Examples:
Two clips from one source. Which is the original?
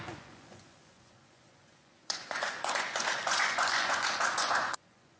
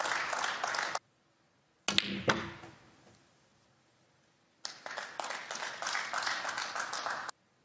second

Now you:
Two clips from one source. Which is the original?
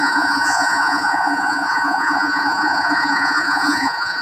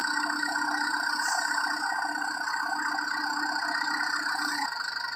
second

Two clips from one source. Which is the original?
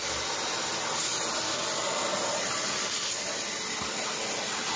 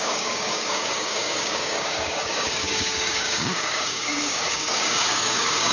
first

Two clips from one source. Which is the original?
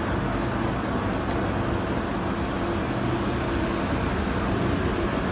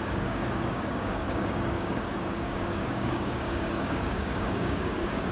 first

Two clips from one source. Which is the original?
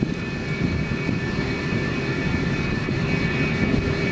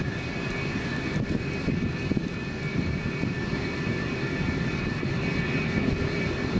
first